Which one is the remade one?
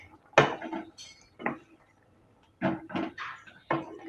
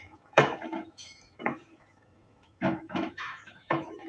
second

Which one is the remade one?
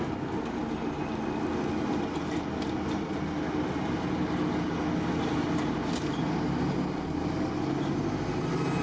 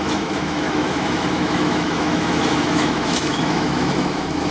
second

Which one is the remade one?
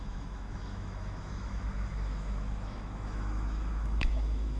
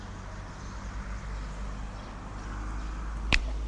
first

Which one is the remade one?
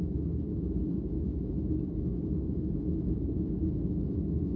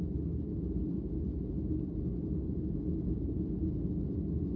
first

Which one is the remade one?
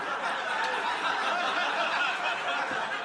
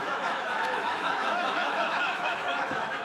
second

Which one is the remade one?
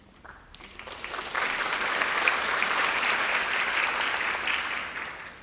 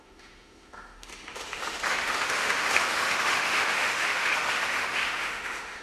second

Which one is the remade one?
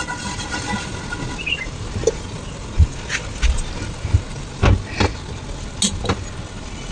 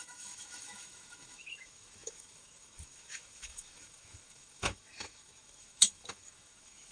second